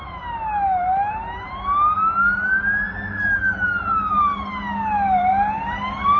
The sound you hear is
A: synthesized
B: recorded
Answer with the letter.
B